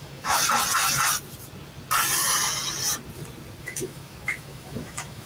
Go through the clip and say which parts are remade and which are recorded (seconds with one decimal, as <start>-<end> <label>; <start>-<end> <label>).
0.0-0.4 remade; 0.4-3.6 recorded; 3.6-5.3 remade